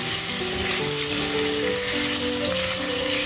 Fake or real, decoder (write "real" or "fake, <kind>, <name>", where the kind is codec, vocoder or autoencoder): real